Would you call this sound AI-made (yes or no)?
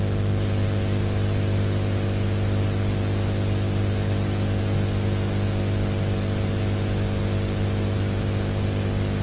no